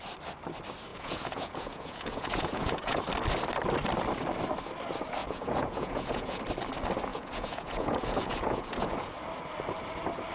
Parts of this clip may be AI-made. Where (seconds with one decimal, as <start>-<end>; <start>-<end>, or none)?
0.9-3.0; 5.2-6.4; 7.1-9.1